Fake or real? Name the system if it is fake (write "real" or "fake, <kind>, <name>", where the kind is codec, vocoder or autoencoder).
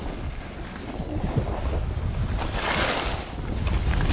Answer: real